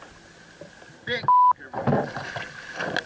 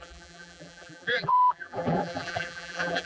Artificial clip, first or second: second